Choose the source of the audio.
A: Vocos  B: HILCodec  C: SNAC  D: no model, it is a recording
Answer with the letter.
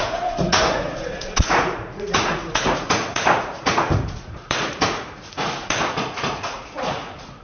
A